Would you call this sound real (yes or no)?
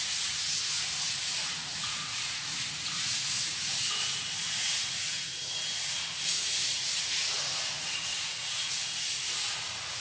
no